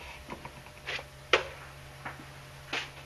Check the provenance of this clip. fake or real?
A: real